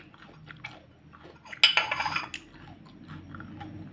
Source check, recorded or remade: recorded